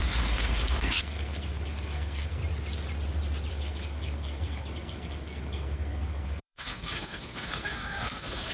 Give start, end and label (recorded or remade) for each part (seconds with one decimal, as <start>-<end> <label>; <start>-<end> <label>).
0.0-2.4 remade; 2.4-3.5 recorded; 3.5-8.5 remade